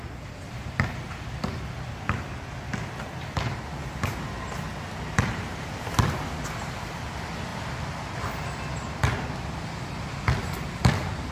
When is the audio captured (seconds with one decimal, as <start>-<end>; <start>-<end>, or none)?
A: 0.0-11.3